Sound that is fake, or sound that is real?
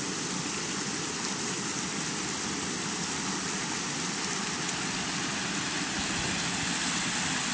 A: real